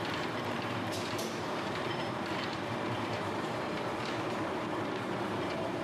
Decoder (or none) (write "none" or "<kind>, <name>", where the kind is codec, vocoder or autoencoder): vocoder, BigVGAN v2